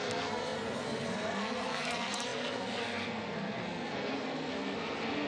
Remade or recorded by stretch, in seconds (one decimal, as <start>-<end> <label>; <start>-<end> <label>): 0.0-5.3 remade